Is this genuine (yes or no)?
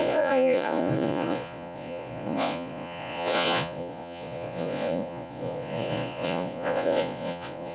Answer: no